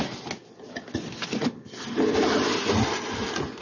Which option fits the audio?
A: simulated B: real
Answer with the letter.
B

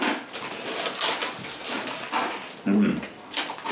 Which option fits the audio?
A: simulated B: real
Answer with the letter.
B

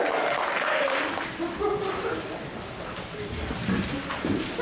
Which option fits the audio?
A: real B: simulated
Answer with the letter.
A